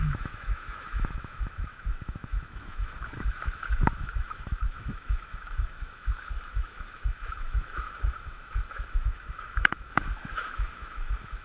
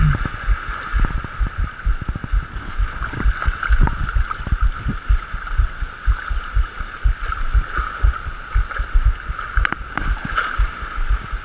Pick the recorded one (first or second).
second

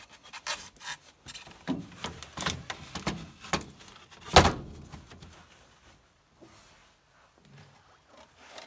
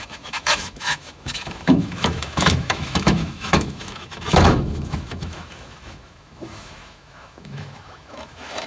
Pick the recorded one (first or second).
first